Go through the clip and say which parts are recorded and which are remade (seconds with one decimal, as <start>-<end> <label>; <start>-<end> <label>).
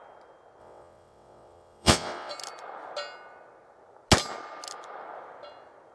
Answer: 0.0-0.6 recorded; 0.6-2.3 remade; 2.3-5.9 recorded